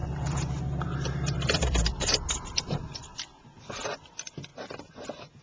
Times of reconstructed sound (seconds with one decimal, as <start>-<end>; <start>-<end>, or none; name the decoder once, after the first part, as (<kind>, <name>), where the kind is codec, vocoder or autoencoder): 0.0-3.2 (vocoder, BigVGAN v2); 4.5-5.4